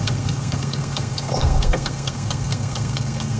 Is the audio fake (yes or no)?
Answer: yes